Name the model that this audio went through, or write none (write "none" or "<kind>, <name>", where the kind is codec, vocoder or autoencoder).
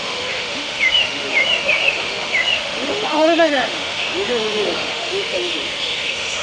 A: autoencoder, DAC-VAE